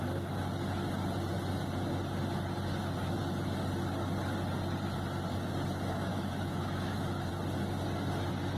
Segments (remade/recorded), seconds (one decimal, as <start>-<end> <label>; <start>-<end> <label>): 0.0-6.1 recorded; 6.1-7.3 remade; 7.3-8.6 recorded